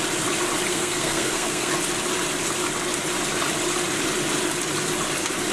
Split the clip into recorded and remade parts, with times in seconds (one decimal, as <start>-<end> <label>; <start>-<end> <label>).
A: 0.0-0.7 recorded; 0.7-1.7 remade; 1.7-5.5 recorded